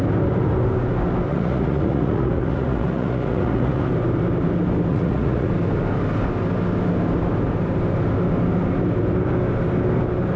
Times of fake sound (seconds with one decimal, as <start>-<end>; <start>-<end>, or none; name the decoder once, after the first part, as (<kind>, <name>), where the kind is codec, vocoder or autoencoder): 1.3-3.9 (vocoder, Vocos); 4.9-5.5